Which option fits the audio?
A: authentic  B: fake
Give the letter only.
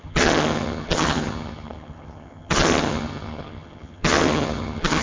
B